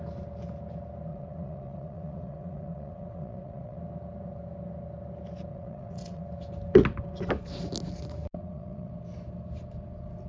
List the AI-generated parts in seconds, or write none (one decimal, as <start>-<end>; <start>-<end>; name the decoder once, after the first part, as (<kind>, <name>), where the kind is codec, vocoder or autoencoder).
1.1-3.8 (vocoder, WaveNeXt); 5.5-6.2; 8.4-8.9